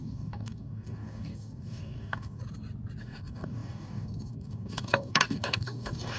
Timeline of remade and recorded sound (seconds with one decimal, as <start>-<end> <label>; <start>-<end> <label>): 0.0-2.4 remade; 2.4-3.0 recorded; 3.0-6.2 remade